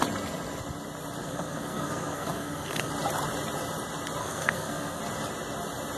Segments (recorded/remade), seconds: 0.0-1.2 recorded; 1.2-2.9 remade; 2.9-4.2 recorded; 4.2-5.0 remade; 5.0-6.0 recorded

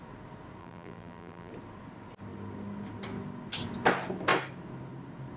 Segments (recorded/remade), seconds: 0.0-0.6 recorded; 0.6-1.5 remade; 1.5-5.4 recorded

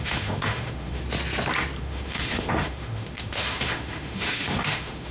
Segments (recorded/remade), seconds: 0.0-1.0 remade; 1.0-1.8 recorded; 1.8-5.1 remade